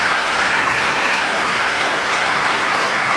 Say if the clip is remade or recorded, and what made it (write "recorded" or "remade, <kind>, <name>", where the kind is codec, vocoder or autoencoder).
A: remade, codec, SNAC